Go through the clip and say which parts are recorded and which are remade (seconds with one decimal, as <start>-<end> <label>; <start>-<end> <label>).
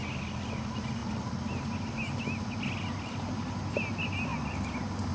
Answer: 0.0-5.1 recorded